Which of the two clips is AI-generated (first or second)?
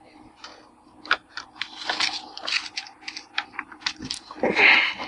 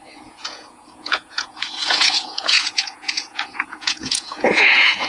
second